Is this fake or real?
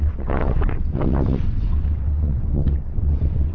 fake